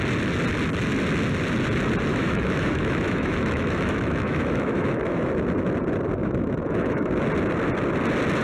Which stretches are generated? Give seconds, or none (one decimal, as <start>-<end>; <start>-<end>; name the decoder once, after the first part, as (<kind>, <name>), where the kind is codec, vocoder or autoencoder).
2.1-5.3 (autoencoder, DAC-VAE); 6.2-7.1